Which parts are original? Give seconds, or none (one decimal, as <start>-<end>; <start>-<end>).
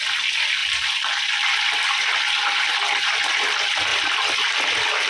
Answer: 0.0-0.6; 2.2-3.9